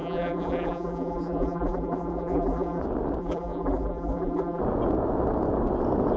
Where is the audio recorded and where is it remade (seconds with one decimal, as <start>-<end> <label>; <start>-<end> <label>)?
0.0-2.8 remade; 2.8-3.2 recorded; 3.2-4.6 remade; 4.6-6.2 recorded